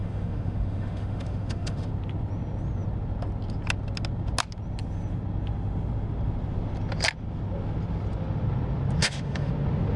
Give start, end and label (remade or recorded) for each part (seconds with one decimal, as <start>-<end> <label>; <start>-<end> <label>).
0.0-1.9 remade; 1.9-9.0 recorded; 9.0-9.5 remade; 9.5-10.0 recorded

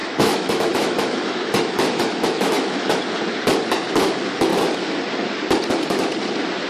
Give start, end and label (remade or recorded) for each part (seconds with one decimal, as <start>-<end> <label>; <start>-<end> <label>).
0.0-3.0 remade; 3.0-6.7 recorded

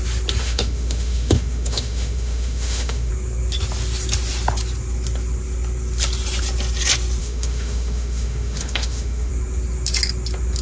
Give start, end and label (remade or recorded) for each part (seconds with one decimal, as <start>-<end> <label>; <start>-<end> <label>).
0.0-0.4 recorded; 0.4-3.1 remade; 3.1-7.2 recorded; 7.2-9.3 remade; 9.3-10.6 recorded

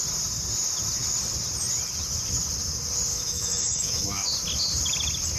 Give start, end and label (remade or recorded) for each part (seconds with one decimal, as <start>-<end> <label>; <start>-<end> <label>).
0.0-3.1 recorded; 3.1-4.3 remade; 4.3-5.4 recorded

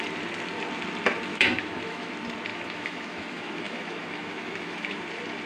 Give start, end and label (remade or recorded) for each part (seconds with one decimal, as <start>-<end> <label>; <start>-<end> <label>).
0.0-1.3 recorded; 1.3-2.1 remade; 2.1-2.5 recorded; 2.5-5.0 remade; 5.0-5.5 recorded

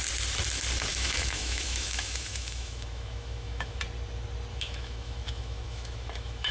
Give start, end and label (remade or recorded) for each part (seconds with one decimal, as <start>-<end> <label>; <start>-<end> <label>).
0.0-0.9 recorded; 0.9-3.8 remade; 3.8-4.5 recorded; 4.5-6.5 remade

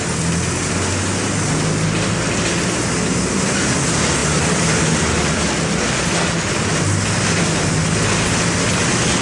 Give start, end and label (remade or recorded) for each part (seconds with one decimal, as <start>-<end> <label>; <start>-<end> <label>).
0.0-9.2 recorded